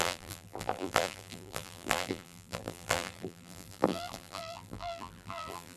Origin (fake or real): fake